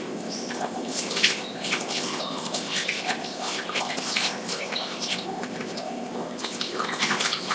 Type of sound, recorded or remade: remade